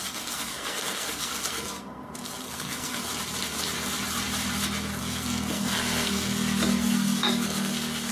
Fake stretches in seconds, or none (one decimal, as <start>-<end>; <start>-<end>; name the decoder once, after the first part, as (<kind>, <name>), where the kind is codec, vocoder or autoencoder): 0.0-3.1 (codec, SNAC); 5.0-8.1